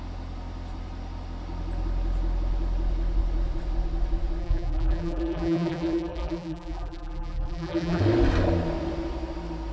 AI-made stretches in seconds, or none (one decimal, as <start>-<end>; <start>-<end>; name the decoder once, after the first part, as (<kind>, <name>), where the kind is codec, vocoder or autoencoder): 4.4-8.0 (vocoder, BigVGAN v2)